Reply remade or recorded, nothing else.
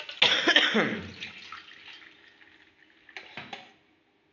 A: recorded